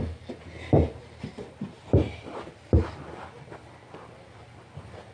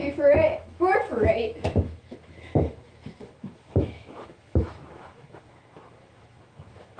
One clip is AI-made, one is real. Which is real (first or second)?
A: first